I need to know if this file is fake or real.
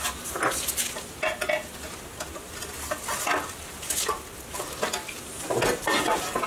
real